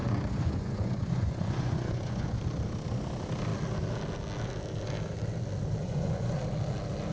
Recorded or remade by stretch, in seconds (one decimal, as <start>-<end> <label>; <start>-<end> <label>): 0.0-2.4 remade; 2.4-5.8 recorded; 5.8-6.4 remade; 6.4-7.1 recorded

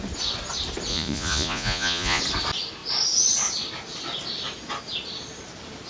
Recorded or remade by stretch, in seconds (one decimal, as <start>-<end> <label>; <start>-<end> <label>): 0.0-0.9 recorded; 0.9-2.2 remade; 2.2-5.9 recorded

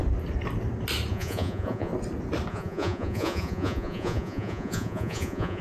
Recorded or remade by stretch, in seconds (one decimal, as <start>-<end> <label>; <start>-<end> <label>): 0.0-1.1 recorded; 1.1-1.9 remade; 1.9-2.5 recorded; 2.5-5.6 remade